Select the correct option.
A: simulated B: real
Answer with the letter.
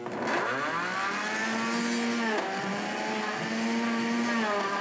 B